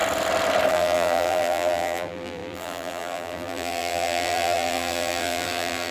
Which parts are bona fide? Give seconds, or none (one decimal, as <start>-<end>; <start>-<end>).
0.0-0.7